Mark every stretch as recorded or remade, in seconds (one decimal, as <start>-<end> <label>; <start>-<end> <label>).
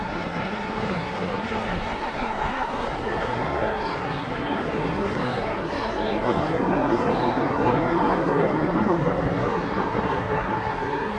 0.0-11.2 remade